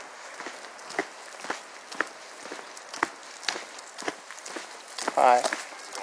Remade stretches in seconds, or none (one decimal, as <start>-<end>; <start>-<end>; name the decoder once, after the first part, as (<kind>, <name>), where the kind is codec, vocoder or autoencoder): none